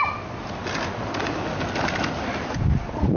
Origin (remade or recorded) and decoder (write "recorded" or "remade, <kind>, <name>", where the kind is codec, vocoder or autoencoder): recorded